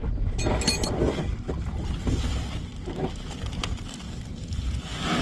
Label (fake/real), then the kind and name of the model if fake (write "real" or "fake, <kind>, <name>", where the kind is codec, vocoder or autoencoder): real